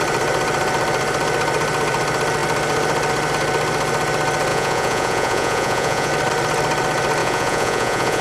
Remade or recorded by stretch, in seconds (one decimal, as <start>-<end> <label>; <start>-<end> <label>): 0.0-4.5 recorded; 4.5-6.1 remade; 6.1-7.2 recorded; 7.2-8.2 remade